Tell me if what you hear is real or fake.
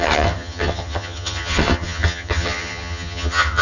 fake